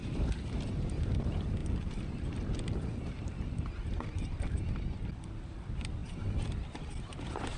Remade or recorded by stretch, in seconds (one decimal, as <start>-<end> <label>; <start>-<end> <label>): 0.0-7.6 remade